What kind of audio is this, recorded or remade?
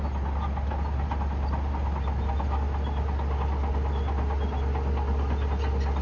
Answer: recorded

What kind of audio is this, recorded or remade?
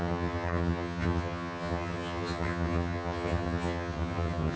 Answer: remade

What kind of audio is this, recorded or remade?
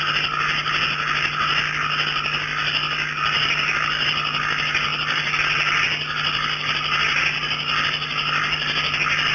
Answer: recorded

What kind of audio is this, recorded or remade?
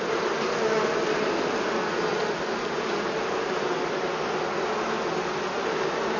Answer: recorded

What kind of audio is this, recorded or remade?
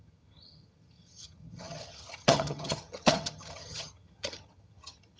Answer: remade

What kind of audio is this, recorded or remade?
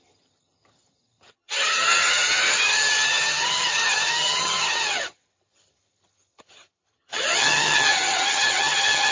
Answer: remade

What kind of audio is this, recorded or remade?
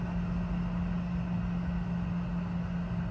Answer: recorded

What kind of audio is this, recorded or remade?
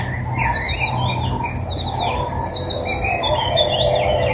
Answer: recorded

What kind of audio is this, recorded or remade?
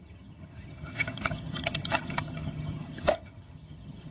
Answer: remade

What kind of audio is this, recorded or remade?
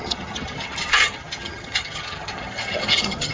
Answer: remade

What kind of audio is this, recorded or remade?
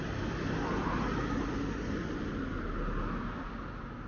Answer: recorded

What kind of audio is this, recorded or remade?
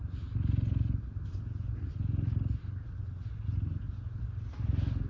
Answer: recorded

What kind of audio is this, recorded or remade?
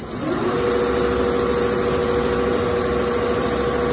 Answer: recorded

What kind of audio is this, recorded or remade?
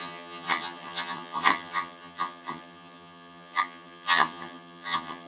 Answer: remade